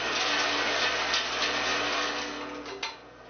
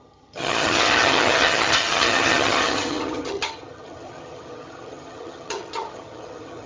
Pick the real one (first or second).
first